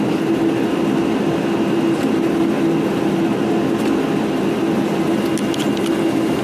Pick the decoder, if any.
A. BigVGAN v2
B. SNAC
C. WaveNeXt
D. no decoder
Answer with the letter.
D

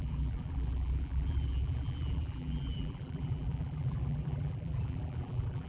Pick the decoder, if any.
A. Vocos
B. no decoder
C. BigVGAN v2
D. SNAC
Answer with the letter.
C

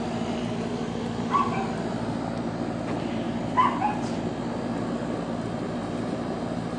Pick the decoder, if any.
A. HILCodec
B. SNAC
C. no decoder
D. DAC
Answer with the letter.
C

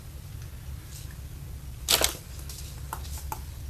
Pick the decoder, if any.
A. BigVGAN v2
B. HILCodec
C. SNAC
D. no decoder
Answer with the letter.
D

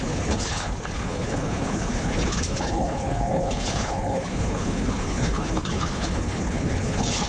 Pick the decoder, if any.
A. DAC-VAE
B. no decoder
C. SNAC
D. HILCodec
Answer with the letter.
D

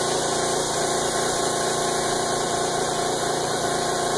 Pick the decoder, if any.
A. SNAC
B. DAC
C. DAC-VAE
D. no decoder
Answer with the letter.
D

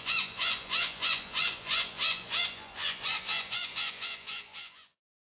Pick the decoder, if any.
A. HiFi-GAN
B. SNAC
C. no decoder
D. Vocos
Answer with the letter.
D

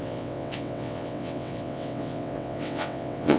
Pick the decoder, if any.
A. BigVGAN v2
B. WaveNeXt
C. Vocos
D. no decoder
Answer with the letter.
B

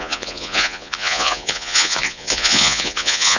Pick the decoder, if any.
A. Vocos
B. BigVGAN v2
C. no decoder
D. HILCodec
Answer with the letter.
A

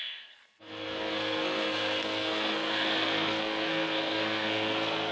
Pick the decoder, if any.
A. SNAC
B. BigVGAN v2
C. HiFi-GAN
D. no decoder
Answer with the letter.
A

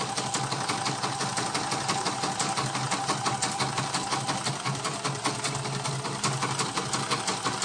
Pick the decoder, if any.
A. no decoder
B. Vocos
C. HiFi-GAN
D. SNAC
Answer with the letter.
A